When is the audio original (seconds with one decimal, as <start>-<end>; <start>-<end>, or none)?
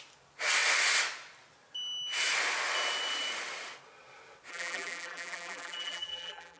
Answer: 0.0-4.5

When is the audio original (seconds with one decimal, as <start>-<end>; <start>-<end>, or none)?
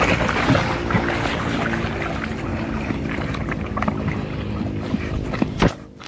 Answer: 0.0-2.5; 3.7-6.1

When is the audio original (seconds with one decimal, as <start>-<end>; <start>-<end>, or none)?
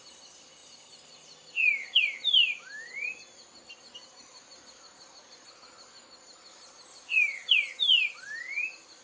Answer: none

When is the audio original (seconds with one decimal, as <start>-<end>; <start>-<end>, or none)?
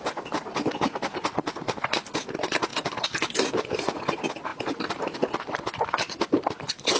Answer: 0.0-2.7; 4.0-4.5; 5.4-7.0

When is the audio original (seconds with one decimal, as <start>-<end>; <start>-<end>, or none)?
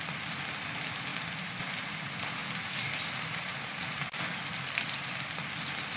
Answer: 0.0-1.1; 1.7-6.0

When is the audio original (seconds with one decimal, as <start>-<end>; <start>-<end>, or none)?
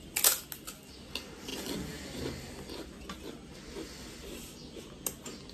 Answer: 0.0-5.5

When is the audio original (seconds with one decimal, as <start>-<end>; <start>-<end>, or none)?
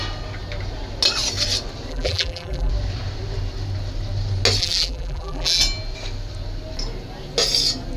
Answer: 0.0-1.9; 2.7-4.6; 5.6-8.0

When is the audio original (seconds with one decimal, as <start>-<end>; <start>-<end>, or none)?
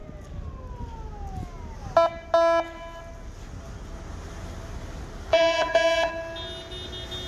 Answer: 0.0-5.3; 6.1-7.3